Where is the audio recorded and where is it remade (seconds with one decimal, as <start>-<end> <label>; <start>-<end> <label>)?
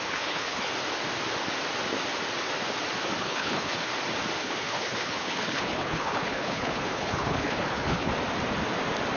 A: 0.0-0.7 remade; 0.7-3.2 recorded; 3.2-3.9 remade; 3.9-4.4 recorded; 4.4-8.1 remade; 8.1-9.2 recorded